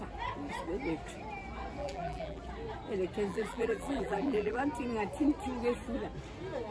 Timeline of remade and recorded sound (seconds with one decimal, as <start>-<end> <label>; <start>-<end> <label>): 0.0-1.8 recorded; 1.8-2.4 remade; 2.4-3.3 recorded; 3.3-4.6 remade; 4.6-6.7 recorded